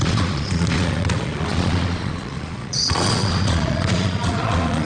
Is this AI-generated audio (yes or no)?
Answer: yes